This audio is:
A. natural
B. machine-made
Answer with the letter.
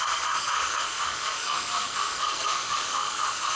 B